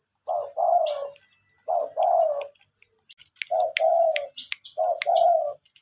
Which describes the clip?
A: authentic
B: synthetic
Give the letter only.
A